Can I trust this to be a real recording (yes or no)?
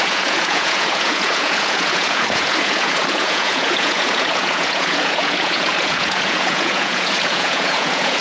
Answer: no